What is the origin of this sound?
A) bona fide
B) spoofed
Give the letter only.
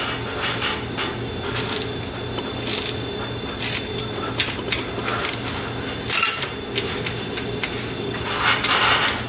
A